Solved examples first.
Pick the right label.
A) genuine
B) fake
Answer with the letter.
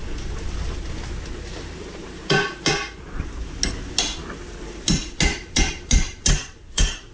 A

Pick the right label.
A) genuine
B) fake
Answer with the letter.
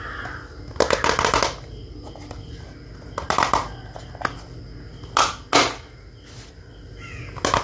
A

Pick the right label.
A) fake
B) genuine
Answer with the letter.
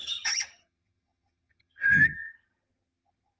A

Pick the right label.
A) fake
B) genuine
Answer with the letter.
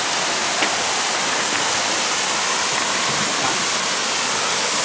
B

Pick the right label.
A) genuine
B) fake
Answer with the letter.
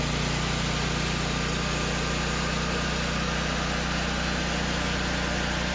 A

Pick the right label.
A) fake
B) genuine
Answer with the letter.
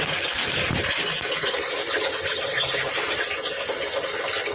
B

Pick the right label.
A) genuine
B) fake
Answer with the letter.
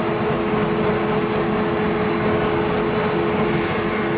A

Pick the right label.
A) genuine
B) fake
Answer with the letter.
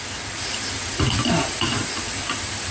A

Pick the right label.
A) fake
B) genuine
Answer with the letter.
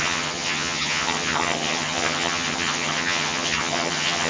A